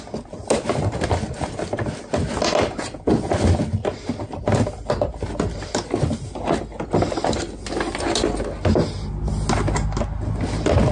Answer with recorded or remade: recorded